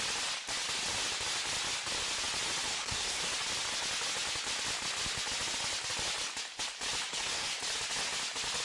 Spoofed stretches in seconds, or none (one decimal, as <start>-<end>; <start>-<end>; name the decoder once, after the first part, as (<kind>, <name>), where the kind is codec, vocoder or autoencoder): 2.7-3.2 (codec, SNAC); 7.1-7.6